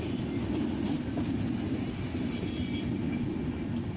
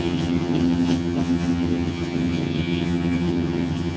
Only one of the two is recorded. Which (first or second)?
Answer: first